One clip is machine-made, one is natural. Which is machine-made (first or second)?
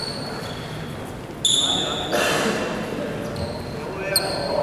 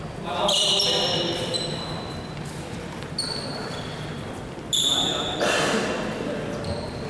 second